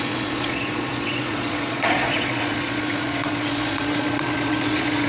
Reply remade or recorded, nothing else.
remade